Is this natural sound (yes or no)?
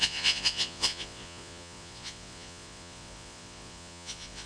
no